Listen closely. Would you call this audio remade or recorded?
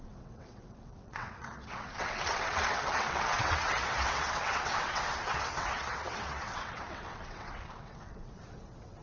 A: remade